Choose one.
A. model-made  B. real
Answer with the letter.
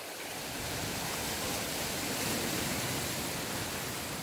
B